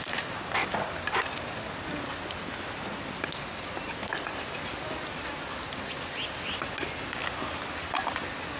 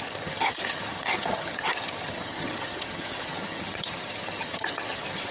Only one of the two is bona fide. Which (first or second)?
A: first